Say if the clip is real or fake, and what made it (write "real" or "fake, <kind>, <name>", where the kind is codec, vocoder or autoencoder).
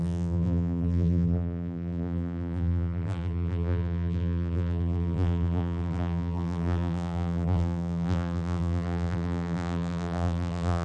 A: fake, vocoder, BigVGAN v2